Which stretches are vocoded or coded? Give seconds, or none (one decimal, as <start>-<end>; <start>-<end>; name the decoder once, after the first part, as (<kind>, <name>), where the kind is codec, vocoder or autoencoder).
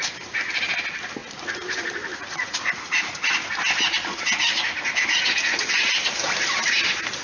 none